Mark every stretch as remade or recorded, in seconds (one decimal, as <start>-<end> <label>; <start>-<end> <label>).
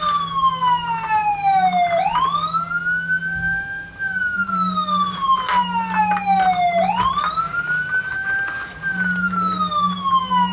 0.0-10.5 recorded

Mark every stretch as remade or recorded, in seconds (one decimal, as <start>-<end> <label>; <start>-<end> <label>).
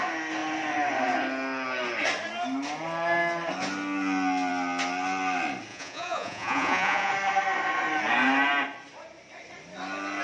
0.0-5.7 recorded; 5.7-7.1 remade; 7.1-10.2 recorded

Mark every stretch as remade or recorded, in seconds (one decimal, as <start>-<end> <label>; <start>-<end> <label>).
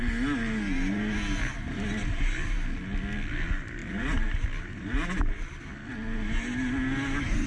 0.0-7.5 recorded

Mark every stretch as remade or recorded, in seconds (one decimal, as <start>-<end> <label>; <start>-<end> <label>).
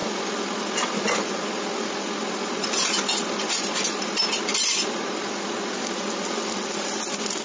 0.0-7.4 recorded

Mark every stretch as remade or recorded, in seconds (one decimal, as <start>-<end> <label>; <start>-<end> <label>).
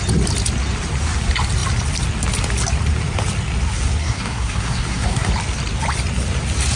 0.0-4.0 recorded; 4.0-5.3 remade; 5.3-6.8 recorded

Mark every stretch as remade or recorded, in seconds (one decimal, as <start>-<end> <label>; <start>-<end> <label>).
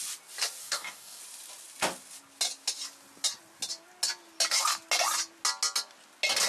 0.0-0.6 recorded; 0.6-1.2 remade; 1.2-6.5 recorded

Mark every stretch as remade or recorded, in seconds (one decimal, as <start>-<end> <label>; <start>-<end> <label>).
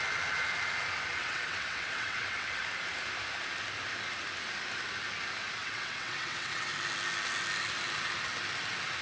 0.0-1.2 recorded; 1.2-2.6 remade; 2.6-5.6 recorded; 5.6-6.7 remade; 6.7-9.0 recorded